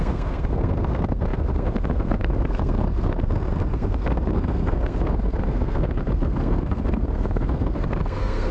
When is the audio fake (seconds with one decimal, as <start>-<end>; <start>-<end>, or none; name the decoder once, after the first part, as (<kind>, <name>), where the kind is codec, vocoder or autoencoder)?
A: 0.0-8.5 (codec, SNAC)